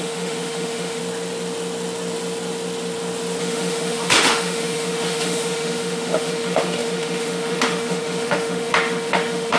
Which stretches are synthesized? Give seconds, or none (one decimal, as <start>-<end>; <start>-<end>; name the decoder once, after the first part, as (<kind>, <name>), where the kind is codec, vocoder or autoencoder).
0.0-1.0 (autoencoder, DAC-VAE); 3.4-9.6